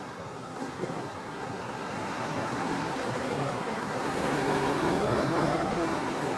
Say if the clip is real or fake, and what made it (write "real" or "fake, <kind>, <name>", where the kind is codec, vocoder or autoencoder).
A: fake, codec, SNAC